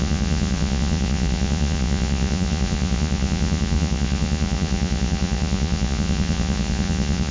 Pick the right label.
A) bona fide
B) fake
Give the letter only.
B